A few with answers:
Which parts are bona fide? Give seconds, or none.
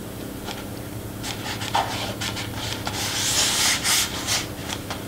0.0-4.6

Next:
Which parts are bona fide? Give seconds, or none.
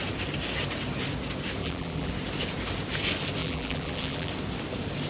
0.0-1.6; 2.1-3.4; 4.3-5.1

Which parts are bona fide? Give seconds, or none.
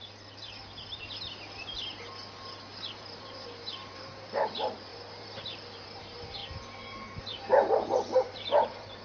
0.6-2.9; 6.4-7.2